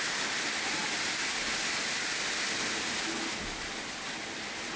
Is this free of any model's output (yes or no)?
yes